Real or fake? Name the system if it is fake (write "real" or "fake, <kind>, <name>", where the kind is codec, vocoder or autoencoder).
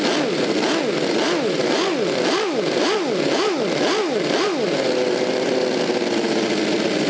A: real